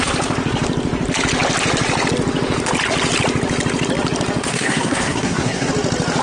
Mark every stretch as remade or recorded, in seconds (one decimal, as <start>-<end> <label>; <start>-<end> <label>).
0.0-4.5 recorded; 4.5-5.7 remade; 5.7-6.2 recorded

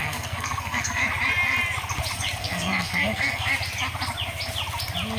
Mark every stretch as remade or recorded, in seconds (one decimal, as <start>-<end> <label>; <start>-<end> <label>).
0.0-1.0 remade; 1.0-2.4 recorded; 2.4-3.5 remade; 3.5-5.2 recorded

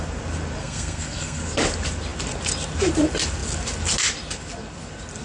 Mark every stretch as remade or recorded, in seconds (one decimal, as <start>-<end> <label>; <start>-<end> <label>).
0.0-0.6 recorded; 0.6-1.4 remade; 1.4-5.2 recorded